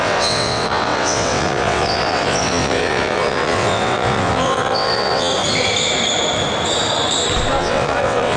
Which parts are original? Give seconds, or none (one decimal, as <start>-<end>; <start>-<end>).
5.3-7.6